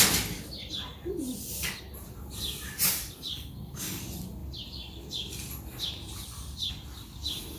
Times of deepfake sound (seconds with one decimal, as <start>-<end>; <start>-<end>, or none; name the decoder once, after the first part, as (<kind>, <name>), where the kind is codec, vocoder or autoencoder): 3.3-4.0 (codec, SNAC)